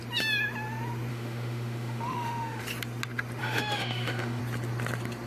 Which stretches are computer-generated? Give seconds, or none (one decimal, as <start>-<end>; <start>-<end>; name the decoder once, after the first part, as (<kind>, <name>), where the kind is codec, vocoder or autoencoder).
1.1-2.6 (autoencoder, DAC-VAE); 3.4-4.4